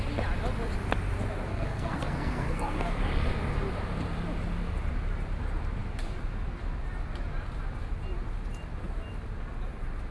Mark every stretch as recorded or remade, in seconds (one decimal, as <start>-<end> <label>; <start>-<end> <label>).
0.0-1.5 recorded; 1.5-3.0 remade; 3.0-10.1 recorded